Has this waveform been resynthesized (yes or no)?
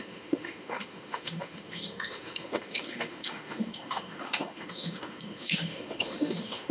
yes